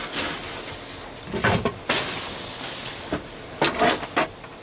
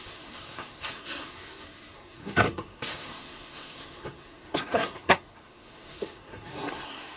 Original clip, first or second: first